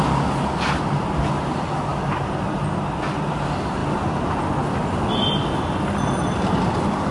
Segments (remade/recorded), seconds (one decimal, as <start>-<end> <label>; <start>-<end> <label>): 0.0-7.1 recorded